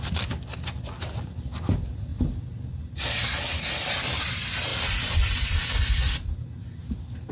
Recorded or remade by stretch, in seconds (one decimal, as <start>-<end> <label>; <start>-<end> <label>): 0.0-2.1 remade; 2.1-2.7 recorded; 2.7-4.7 remade; 4.7-7.3 recorded